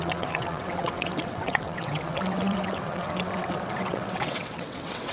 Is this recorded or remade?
remade